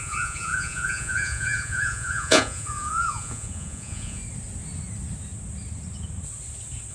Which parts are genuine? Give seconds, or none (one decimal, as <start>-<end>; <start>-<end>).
4.2-6.9